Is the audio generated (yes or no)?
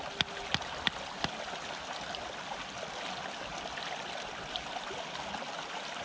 no